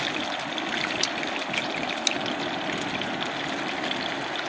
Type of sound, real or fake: real